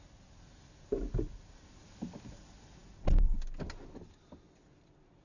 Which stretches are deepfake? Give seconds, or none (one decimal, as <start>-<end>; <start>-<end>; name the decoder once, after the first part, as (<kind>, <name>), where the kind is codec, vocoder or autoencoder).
none